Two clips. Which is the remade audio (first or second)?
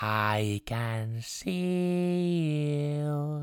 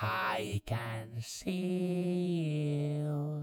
second